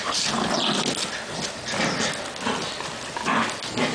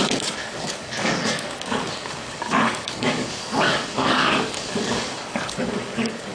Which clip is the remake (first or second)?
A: second